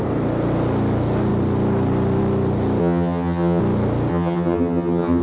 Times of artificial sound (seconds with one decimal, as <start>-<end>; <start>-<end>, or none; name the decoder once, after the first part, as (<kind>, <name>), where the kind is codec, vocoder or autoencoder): 2.8-3.6 (vocoder, HiFi-GAN); 4.1-5.2